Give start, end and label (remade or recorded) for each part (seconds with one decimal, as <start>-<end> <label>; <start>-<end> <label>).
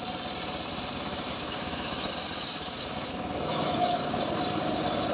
0.0-1.1 recorded; 1.1-4.2 remade; 4.2-5.1 recorded